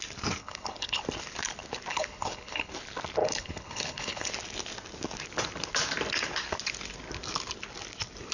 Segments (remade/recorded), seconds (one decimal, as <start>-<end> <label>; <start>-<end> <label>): 0.0-0.4 recorded; 0.4-1.0 remade; 1.0-1.9 recorded; 1.9-2.7 remade; 2.7-3.2 recorded; 3.2-4.3 remade; 4.3-8.3 recorded